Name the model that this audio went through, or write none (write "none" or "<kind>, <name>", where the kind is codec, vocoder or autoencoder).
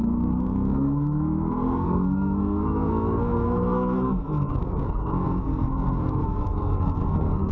codec, SNAC